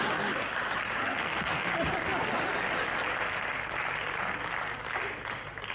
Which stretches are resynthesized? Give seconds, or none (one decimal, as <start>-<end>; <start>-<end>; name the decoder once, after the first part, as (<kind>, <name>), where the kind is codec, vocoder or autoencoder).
1.0-1.7 (codec, SNAC)